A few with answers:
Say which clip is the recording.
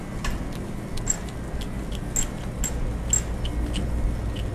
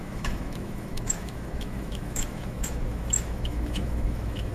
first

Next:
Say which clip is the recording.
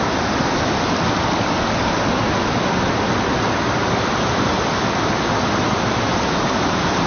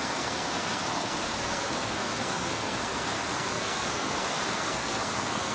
first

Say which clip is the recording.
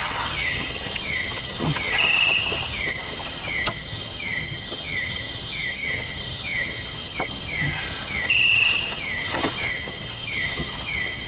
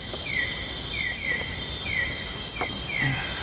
second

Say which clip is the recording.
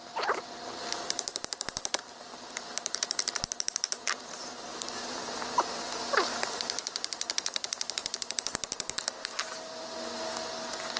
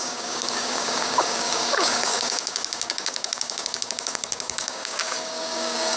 first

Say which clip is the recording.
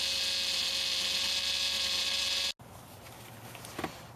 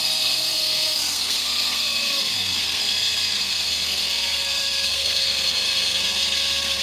first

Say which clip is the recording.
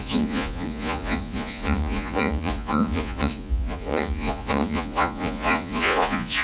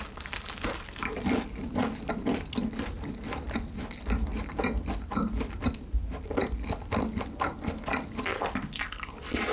second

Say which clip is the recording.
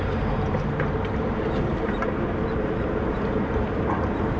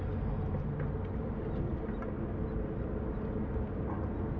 second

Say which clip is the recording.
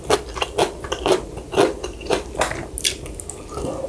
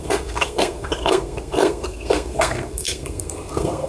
first